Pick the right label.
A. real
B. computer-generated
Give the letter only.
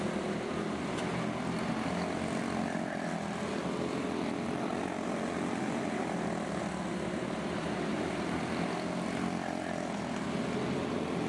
A